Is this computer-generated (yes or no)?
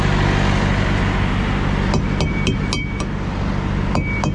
no